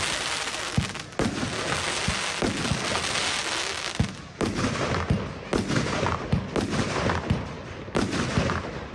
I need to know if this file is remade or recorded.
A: recorded